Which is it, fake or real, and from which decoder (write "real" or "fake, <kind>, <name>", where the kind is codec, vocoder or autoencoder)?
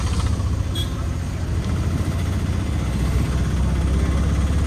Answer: real